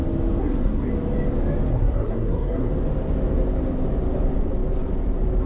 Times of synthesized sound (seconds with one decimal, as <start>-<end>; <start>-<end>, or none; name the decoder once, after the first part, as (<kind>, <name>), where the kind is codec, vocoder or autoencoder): 0.4-0.9 (codec, SNAC); 1.7-2.7